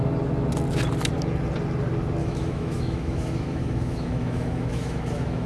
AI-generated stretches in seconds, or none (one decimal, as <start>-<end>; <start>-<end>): 2.2-5.5